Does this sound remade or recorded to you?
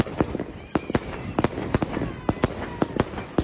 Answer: recorded